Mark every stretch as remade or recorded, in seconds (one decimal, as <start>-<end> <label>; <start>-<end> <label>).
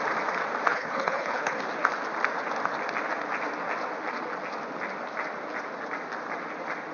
0.0-0.7 recorded; 0.7-1.6 remade; 1.6-6.9 recorded